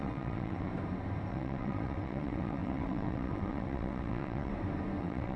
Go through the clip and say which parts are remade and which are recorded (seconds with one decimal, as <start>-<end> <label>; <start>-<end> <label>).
0.0-0.7 remade; 0.7-1.3 recorded; 1.3-4.5 remade; 4.5-5.0 recorded; 5.0-5.4 remade